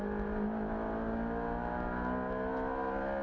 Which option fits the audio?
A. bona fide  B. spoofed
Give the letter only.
A